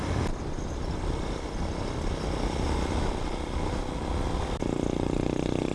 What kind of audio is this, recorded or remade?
recorded